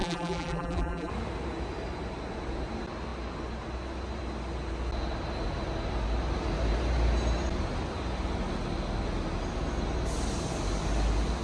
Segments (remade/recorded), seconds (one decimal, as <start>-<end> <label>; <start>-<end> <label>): 0.0-1.1 remade; 1.1-11.4 recorded